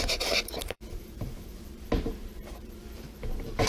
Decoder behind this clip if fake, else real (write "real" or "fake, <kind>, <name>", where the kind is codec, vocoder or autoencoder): fake, vocoder, BigVGAN v2